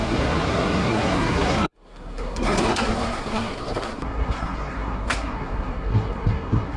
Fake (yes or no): yes